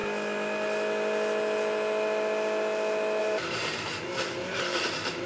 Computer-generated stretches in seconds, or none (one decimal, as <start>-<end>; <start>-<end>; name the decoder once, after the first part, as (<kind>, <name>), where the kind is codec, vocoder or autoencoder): 3.2-5.3 (vocoder, BigVGAN v2)